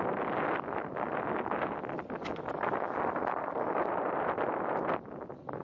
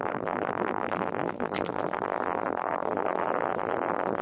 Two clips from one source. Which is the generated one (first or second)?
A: second